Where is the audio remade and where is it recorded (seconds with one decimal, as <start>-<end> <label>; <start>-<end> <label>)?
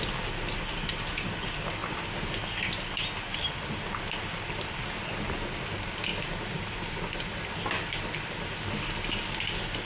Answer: 0.0-9.8 recorded